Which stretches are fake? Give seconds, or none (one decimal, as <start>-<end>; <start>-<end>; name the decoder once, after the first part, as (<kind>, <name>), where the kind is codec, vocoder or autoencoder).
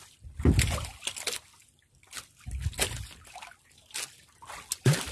none